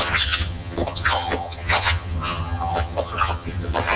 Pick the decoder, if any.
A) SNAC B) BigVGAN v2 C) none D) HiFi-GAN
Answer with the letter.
D